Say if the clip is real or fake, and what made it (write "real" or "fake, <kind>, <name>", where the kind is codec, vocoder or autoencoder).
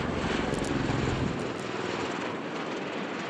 fake, vocoder, BigVGAN v2